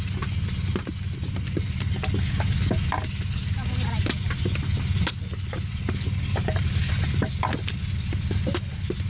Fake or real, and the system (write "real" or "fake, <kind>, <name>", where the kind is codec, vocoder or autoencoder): real